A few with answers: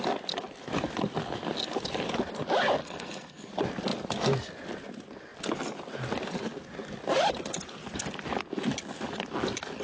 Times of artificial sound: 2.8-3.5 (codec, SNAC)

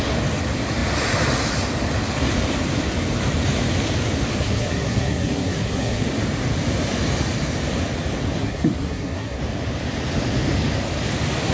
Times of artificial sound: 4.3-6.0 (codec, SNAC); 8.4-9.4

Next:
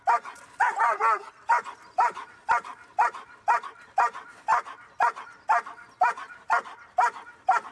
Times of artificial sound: none